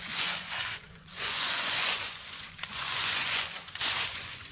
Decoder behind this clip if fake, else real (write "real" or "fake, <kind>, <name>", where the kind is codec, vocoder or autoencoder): fake, vocoder, Vocos